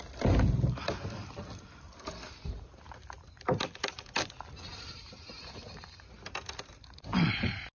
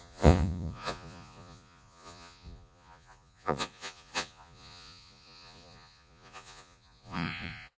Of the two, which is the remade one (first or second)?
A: second